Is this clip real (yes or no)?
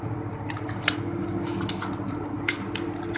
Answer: yes